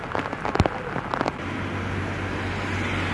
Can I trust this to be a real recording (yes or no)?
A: yes